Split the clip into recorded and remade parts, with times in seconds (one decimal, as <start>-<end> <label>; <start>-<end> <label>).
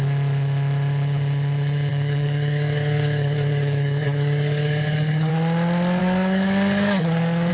0.0-1.9 recorded; 1.9-5.3 remade; 5.3-6.0 recorded; 6.0-7.5 remade